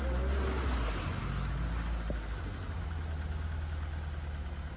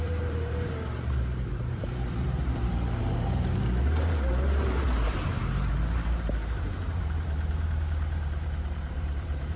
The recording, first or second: first